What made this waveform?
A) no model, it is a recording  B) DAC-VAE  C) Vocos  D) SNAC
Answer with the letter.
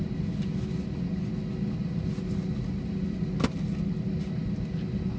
A